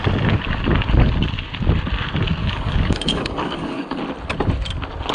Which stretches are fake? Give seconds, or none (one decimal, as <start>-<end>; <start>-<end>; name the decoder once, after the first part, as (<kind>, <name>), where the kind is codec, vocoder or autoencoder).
2.4-4.0 (codec, DAC)